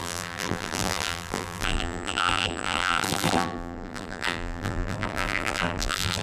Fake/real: fake